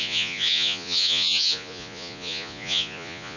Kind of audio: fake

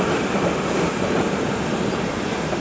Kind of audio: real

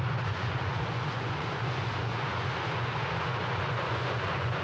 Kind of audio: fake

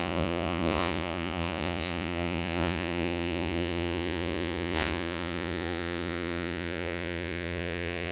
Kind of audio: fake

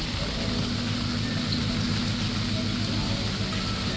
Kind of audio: real